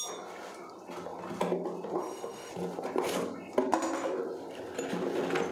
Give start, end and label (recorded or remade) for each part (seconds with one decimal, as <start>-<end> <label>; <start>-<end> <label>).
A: 0.0-2.0 recorded; 2.0-2.5 remade; 2.5-5.5 recorded